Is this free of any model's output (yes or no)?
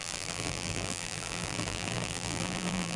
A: no